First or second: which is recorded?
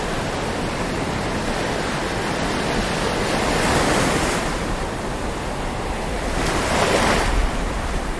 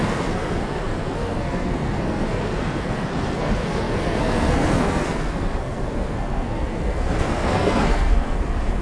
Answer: first